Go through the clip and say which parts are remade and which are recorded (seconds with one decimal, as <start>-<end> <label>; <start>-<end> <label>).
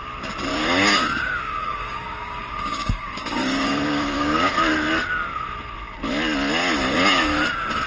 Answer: 0.0-0.5 recorded; 0.5-4.5 remade; 4.5-7.9 recorded